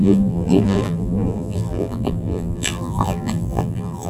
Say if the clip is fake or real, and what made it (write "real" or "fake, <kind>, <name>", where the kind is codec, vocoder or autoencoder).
fake, vocoder, BigVGAN v2